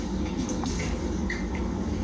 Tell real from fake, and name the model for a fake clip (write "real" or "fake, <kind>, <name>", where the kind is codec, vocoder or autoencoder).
fake, codec, DAC